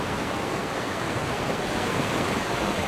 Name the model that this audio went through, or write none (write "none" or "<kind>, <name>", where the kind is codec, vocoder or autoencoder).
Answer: codec, SNAC